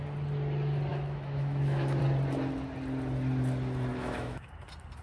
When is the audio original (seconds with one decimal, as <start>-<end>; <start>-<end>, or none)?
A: 0.0-0.9; 2.0-3.9; 4.5-5.0